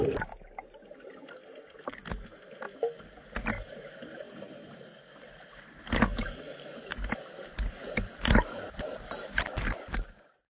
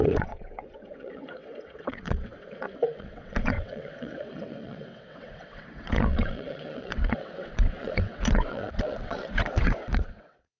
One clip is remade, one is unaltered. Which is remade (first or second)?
second